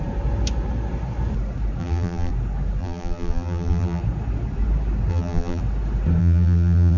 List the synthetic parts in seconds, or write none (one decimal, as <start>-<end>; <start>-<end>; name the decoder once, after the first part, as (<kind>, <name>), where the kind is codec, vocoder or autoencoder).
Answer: 1.8-2.3 (vocoder, BigVGAN v2); 2.8-4.0; 5.1-5.6; 6.2-7.0